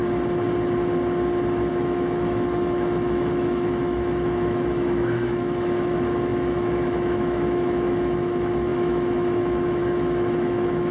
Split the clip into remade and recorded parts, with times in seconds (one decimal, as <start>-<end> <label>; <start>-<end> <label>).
0.0-1.7 recorded; 1.7-10.9 remade